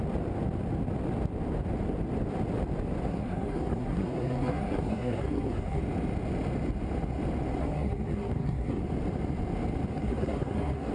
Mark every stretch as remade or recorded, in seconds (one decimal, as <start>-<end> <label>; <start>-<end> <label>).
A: 0.0-3.1 recorded; 3.1-5.8 remade; 5.8-7.6 recorded; 7.6-8.8 remade; 8.8-9.9 recorded; 9.9-10.9 remade

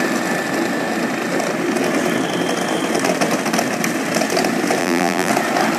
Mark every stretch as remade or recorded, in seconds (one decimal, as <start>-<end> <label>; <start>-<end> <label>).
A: 0.0-4.8 recorded; 4.8-5.3 remade; 5.3-5.8 recorded

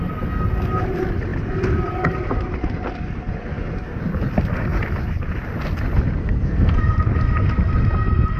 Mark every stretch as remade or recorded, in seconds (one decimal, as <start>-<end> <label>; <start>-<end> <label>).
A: 0.0-6.2 recorded; 6.2-6.8 remade; 6.8-8.4 recorded

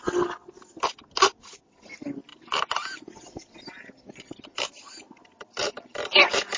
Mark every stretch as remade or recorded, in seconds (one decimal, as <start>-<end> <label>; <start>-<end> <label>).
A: 0.0-2.3 recorded; 2.3-3.0 remade; 3.0-5.6 recorded; 5.6-6.1 remade; 6.1-6.6 recorded

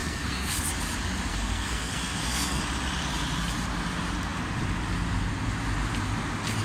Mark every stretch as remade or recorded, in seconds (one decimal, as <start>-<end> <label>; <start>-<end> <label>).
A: 0.0-0.6 remade; 0.6-1.3 recorded; 1.3-2.6 remade; 2.6-6.6 recorded